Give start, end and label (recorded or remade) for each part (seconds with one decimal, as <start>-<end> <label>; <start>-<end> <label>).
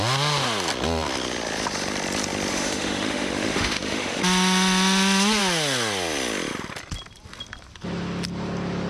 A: 0.0-2.5 recorded; 2.5-4.2 remade; 4.2-8.9 recorded